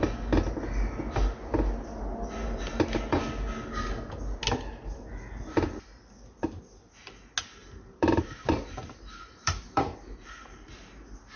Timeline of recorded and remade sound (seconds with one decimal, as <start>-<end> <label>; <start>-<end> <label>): 0.0-7.6 recorded; 7.6-10.7 remade; 10.7-11.4 recorded